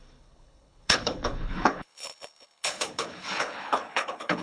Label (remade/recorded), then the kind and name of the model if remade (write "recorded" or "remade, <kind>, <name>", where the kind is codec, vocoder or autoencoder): remade, codec, HILCodec